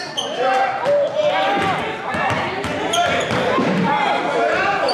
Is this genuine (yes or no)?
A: yes